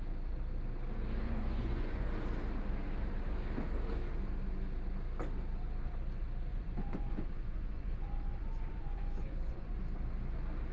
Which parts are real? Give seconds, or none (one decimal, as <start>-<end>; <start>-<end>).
0.0-1.2; 2.1-6.5; 9.8-10.7